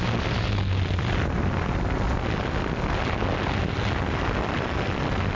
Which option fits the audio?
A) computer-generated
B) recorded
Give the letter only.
B